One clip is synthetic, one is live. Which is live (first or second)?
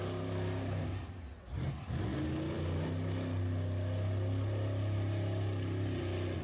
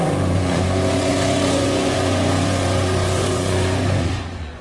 first